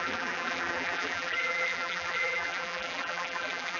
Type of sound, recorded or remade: remade